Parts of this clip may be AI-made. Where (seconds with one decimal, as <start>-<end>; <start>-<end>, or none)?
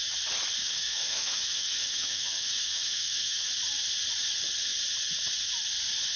0.6-3.5